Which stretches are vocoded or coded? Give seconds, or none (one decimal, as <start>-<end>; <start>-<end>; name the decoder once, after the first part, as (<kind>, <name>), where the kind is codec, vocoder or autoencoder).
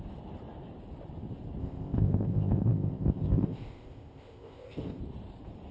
1.6-5.0 (codec, ZipCodec)